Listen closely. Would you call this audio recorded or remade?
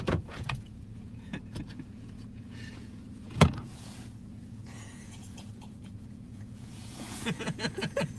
remade